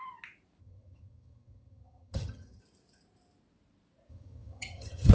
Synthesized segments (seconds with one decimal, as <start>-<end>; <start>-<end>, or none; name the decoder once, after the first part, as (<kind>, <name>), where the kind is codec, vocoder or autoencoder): 0.6-2.6 (vocoder, HiFi-GAN); 4.1-5.1